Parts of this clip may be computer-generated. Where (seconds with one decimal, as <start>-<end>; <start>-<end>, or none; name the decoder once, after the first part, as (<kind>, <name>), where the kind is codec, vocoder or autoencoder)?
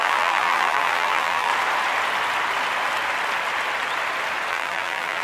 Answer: 0.0-1.5 (vocoder, BigVGAN v2); 4.5-5.2